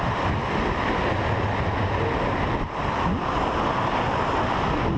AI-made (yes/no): no